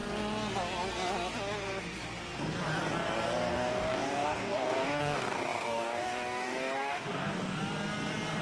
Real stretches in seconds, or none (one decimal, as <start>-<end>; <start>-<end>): 0.0-3.5; 7.6-8.4

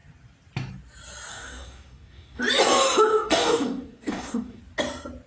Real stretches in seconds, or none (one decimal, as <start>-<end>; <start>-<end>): 0.0-1.3; 2.4-3.1; 4.6-5.3

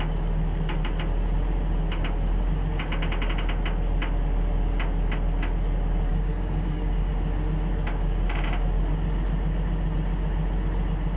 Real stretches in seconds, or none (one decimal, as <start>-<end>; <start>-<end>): 0.0-6.1; 7.1-11.2

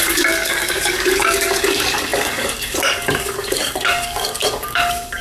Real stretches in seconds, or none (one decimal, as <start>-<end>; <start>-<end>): none

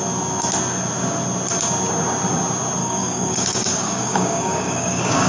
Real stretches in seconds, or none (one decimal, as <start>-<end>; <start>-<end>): 0.0-2.8

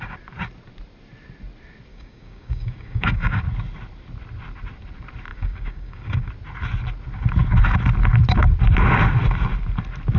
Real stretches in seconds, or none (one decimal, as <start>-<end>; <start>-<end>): 0.0-1.9; 3.4-5.3; 6.3-10.2

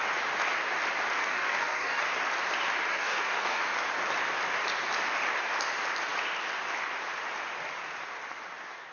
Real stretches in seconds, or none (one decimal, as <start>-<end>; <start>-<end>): 0.0-1.2; 2.0-2.9; 3.6-8.9